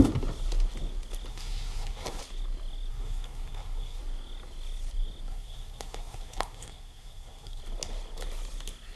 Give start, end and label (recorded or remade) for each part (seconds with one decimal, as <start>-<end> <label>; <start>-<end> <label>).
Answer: 0.0-1.3 recorded; 1.3-2.2 remade; 2.2-2.9 recorded; 2.9-4.0 remade; 4.0-5.3 recorded; 5.3-7.6 remade; 7.6-9.0 recorded